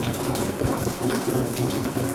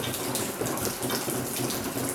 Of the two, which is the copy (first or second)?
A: first